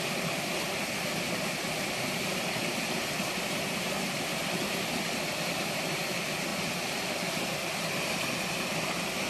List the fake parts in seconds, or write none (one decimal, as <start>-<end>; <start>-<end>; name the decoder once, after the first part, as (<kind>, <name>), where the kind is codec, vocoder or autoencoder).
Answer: none